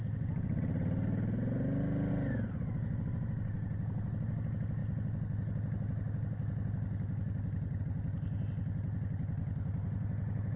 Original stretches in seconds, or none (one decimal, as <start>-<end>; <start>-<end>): 0.0-10.6